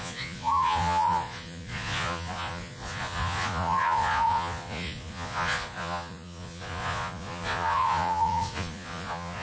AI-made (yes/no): yes